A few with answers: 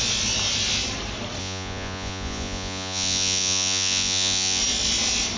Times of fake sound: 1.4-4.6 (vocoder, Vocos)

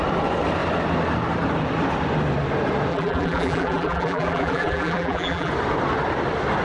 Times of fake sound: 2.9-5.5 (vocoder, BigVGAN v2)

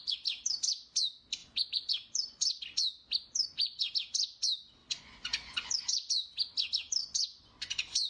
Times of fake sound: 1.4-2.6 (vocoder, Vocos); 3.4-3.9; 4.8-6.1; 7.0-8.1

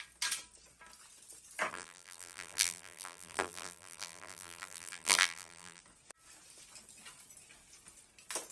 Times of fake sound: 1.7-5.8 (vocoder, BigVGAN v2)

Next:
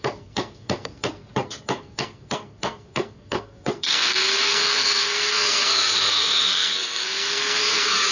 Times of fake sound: 0.0-8.1 (codec, SNAC)

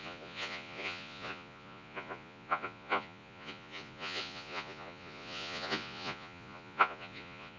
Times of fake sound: 0.0-7.6 (vocoder, Vocos)

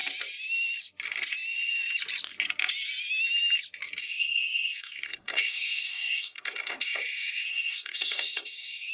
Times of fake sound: 4.0-8.9 (codec, SNAC)